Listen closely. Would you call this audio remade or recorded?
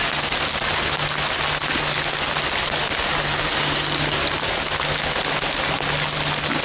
recorded